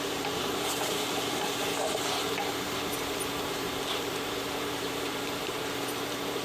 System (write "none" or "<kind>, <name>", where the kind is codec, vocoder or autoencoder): vocoder, BigVGAN v2